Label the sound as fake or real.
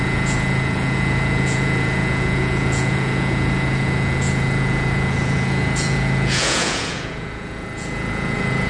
fake